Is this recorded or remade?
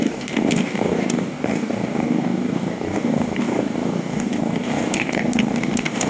remade